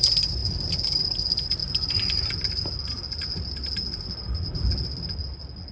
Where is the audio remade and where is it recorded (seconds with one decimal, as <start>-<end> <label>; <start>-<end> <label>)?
0.0-5.7 recorded